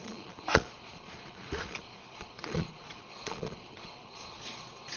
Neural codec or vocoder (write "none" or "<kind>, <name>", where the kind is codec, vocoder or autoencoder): vocoder, Vocos